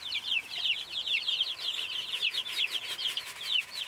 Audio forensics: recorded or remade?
recorded